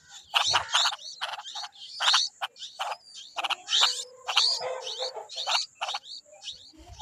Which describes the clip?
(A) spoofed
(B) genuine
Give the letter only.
B